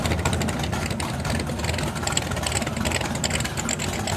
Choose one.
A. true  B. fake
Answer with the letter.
A